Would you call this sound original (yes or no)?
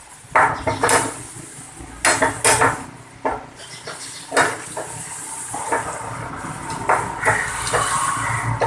yes